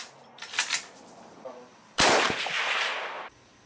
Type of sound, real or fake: real